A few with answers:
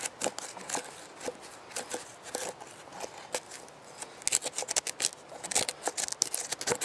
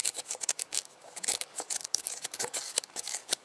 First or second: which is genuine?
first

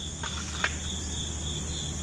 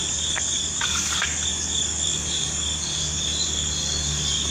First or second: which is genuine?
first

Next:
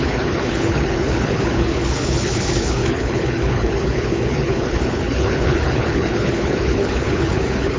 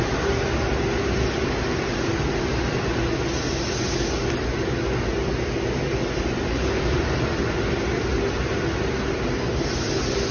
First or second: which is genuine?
second